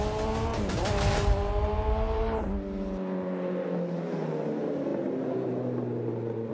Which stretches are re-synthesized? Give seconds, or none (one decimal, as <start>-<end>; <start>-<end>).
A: 0.5-2.4